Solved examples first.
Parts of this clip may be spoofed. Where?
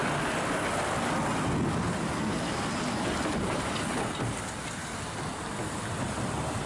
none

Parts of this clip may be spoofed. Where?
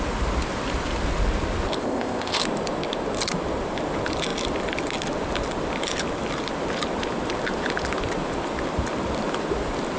1.8-2.4 (codec, ZipCodec)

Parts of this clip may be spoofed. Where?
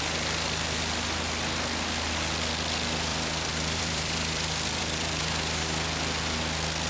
3.1-5.2 (vocoder, BigVGAN v2)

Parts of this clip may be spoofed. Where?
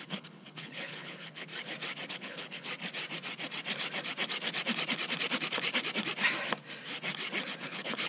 0.0-1.5 (codec, HILCodec); 2.1-2.7; 7.6-8.1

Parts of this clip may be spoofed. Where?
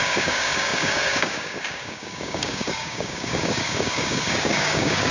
0.0-5.1 (codec, DAC)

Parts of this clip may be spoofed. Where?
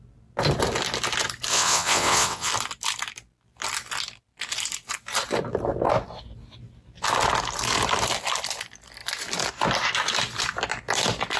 1.5-2.5 (vocoder, WaveNeXt)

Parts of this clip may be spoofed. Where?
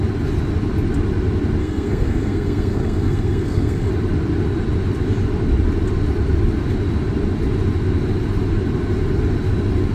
1.6-3.9 (codec, SNAC)